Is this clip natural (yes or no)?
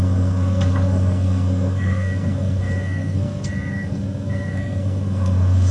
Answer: no